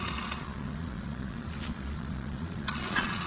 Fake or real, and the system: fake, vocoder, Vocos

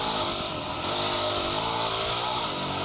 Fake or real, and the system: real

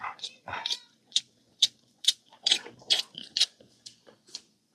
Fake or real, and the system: fake, vocoder, Vocos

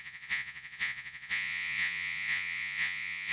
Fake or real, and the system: fake, vocoder, Vocos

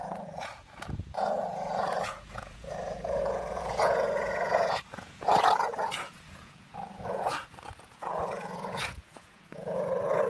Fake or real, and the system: fake, vocoder, Vocos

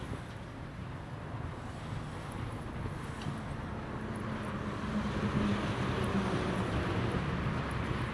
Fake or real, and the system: real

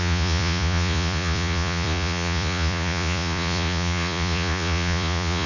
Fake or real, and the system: fake, vocoder, Vocos